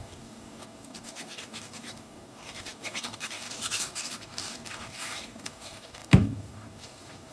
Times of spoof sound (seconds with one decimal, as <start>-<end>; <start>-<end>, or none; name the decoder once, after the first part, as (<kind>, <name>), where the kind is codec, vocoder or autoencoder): 0.0-7.3 (codec, DAC)